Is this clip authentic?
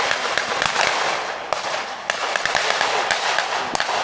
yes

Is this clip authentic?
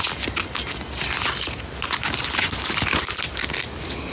yes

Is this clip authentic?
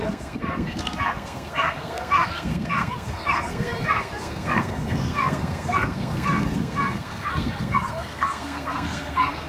no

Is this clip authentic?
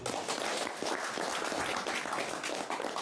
yes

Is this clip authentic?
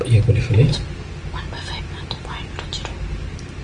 yes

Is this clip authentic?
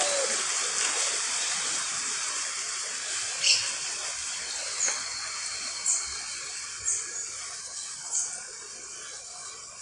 yes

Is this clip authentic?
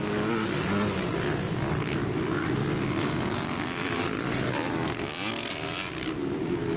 yes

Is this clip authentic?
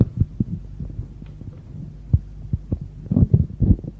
yes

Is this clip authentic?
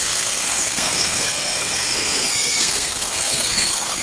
no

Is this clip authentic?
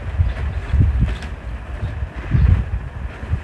yes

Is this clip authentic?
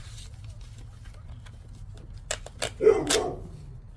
yes